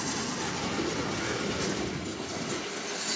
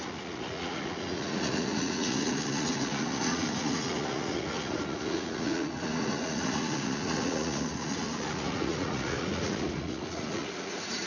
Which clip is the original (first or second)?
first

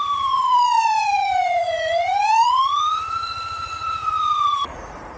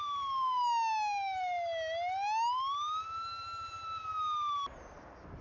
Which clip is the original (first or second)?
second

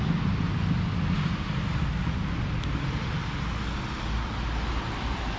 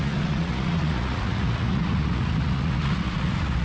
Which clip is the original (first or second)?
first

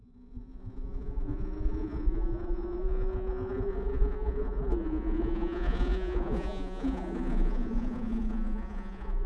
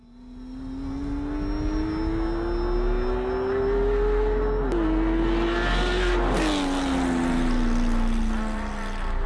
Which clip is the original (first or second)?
second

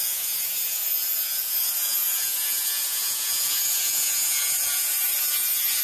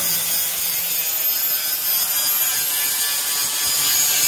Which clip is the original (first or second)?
second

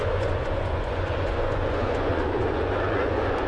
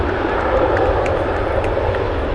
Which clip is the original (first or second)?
second